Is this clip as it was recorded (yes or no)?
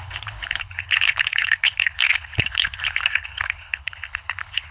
no